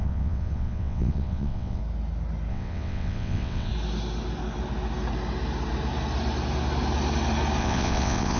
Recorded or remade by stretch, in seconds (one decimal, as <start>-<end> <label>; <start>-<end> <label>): 0.0-1.8 remade; 1.8-2.5 recorded; 2.5-3.7 remade; 3.7-7.6 recorded; 7.6-8.4 remade